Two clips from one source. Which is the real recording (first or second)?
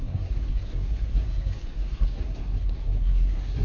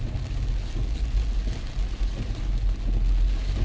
second